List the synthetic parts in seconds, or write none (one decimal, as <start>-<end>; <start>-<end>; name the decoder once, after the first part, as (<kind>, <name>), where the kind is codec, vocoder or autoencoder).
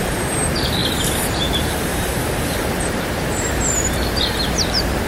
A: 0.0-5.1 (vocoder, BigVGAN v2)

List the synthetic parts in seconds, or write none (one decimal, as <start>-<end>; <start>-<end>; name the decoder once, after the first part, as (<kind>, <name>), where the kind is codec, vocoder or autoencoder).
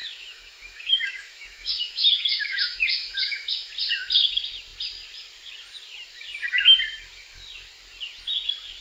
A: 0.0-3.7 (autoencoder, DAC-VAE)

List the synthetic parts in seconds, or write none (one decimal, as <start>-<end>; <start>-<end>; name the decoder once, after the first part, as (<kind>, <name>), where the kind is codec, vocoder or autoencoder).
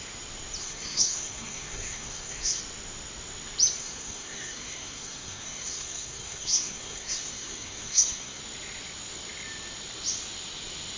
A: 0.6-2.6 (codec, SNAC); 3.8-8.4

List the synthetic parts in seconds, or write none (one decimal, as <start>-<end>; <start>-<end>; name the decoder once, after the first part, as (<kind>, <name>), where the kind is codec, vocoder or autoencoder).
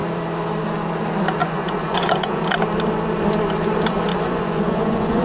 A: 1.4-2.4 (vocoder, Vocos); 4.1-5.2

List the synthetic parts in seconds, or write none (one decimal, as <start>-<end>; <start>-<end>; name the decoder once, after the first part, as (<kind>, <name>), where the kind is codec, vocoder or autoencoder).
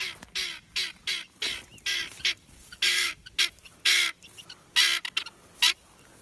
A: 2.6-3.1 (codec, DAC)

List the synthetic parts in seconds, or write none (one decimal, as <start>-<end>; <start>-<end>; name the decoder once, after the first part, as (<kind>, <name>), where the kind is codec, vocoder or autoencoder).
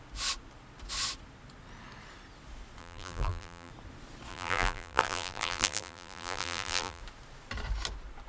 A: 2.8-3.7 (vocoder, BigVGAN v2); 4.3-7.0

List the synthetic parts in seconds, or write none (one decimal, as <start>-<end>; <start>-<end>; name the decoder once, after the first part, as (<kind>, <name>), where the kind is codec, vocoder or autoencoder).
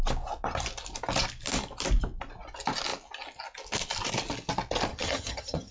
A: 4.9-5.7 (vocoder, HiFi-GAN)